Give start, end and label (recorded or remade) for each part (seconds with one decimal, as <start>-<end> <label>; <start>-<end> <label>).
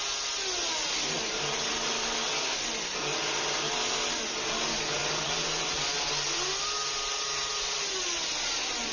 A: 0.0-8.9 recorded